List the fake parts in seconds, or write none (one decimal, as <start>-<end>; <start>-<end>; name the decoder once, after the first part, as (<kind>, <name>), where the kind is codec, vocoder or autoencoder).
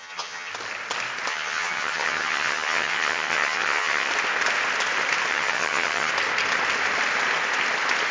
0.0-0.5 (vocoder, HiFi-GAN); 1.3-4.1; 5.3-6.1